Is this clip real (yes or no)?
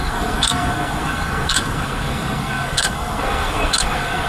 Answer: no